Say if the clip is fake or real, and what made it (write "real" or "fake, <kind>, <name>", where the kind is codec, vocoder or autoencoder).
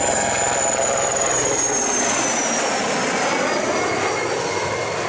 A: real